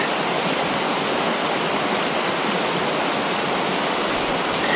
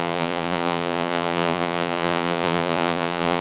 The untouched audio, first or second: first